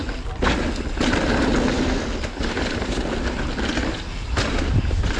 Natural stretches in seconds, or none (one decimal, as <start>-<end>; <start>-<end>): 0.0-1.0; 1.5-4.6